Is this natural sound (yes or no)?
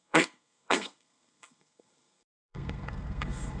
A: no